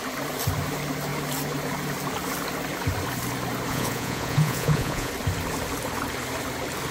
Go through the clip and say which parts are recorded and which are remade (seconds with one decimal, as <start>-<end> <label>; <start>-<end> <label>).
0.0-3.7 recorded; 3.7-5.1 remade; 5.1-6.9 recorded